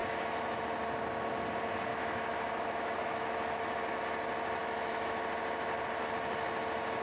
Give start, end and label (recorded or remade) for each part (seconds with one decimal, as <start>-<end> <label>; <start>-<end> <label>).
0.0-0.6 remade; 0.6-1.9 recorded; 1.9-4.0 remade; 4.0-4.6 recorded; 4.6-5.2 remade; 5.2-7.0 recorded